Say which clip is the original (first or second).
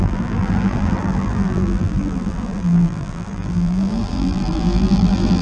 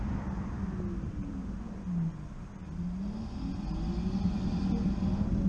second